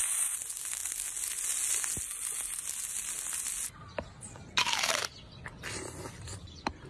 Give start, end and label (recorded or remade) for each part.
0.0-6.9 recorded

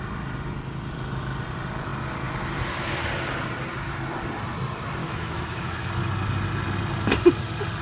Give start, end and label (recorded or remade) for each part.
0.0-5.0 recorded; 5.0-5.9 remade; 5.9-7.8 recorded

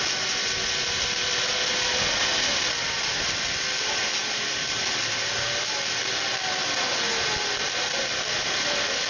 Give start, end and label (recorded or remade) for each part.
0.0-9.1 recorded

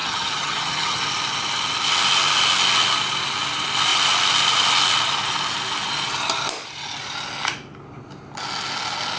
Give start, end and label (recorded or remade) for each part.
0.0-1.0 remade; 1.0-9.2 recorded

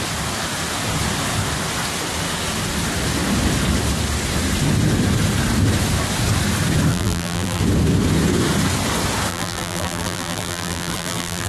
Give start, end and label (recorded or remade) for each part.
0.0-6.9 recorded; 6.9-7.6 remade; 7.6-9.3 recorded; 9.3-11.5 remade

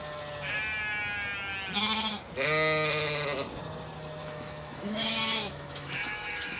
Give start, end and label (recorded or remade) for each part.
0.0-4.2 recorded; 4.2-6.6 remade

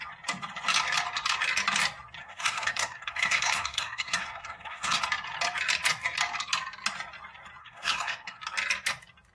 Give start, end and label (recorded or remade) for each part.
0.0-2.2 recorded; 2.2-5.0 remade; 5.0-7.6 recorded; 7.6-8.4 remade; 8.4-9.3 recorded